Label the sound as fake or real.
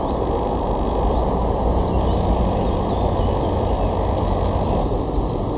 real